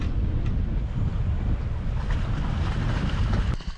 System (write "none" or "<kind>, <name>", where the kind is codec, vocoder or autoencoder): none